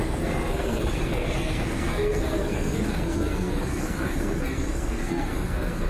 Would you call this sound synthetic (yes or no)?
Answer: yes